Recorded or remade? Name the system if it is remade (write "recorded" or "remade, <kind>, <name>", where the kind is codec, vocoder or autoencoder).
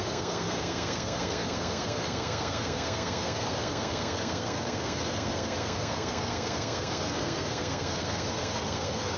remade, codec, SNAC